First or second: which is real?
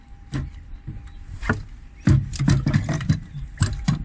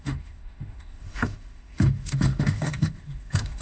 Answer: first